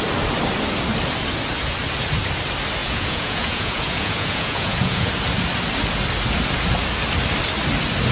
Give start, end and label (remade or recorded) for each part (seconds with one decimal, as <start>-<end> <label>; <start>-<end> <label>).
0.0-2.8 recorded; 2.8-5.1 remade; 5.1-8.1 recorded